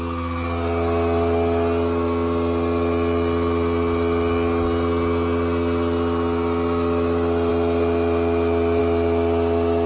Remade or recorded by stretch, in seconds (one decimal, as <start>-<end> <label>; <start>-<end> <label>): 0.0-9.9 recorded